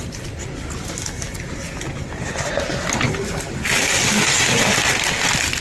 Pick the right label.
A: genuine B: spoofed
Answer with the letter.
A